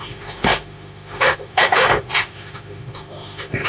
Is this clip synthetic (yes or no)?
yes